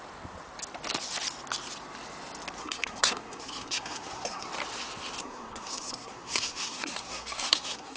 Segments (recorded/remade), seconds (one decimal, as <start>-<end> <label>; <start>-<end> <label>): 0.0-2.6 recorded; 2.6-4.5 remade; 4.5-5.2 recorded; 5.2-8.0 remade